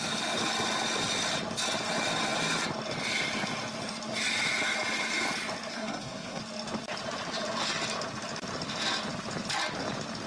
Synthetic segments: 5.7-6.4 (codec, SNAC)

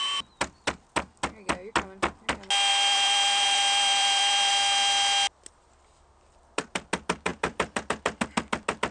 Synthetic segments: 2.7-4.5 (vocoder, BigVGAN v2)

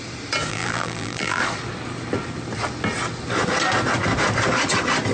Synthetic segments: 0.5-1.4 (vocoder, BigVGAN v2)

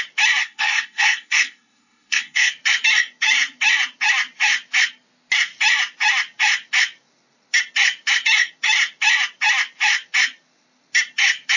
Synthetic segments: 0.4-2.5 (codec, SNAC)

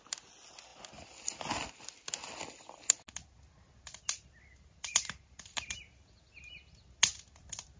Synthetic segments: none

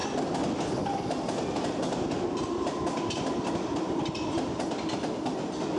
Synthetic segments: none